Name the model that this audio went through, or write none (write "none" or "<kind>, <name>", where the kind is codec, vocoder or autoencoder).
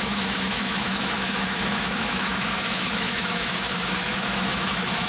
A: autoencoder, DAC-VAE